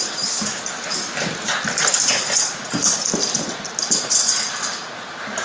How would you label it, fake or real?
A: real